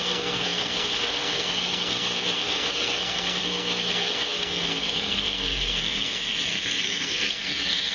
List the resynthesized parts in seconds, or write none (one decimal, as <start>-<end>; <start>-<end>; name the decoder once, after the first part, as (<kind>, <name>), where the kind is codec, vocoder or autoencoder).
0.0-7.9 (codec, SNAC)